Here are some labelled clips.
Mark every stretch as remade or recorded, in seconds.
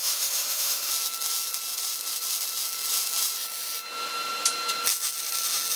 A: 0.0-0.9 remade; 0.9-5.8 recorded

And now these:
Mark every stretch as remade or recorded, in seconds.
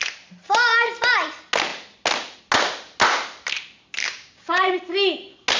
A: 0.0-4.0 recorded; 4.0-4.7 remade; 4.7-5.6 recorded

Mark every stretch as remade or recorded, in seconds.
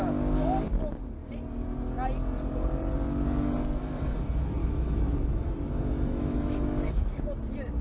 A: 0.0-4.6 recorded; 4.6-7.2 remade; 7.2-7.8 recorded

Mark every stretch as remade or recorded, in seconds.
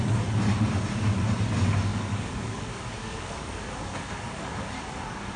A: 0.0-1.9 recorded; 1.9-5.4 remade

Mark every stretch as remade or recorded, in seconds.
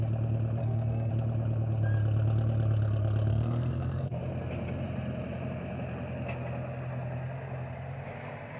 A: 0.0-0.6 recorded; 0.6-1.1 remade; 1.1-3.3 recorded; 3.3-4.2 remade; 4.2-8.6 recorded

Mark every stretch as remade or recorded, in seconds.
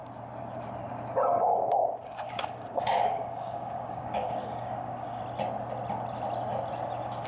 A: 0.0-1.5 recorded; 1.5-5.2 remade; 5.2-7.3 recorded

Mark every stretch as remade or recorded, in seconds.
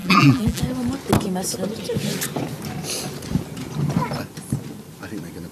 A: 0.0-0.6 remade; 0.6-5.5 recorded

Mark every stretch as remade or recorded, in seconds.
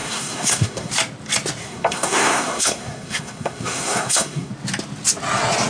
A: 0.0-0.9 remade; 0.9-1.6 recorded; 1.6-4.5 remade; 4.5-5.7 recorded